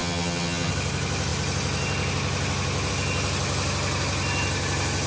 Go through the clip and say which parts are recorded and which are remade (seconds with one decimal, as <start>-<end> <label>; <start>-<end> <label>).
0.0-0.7 remade; 0.7-5.1 recorded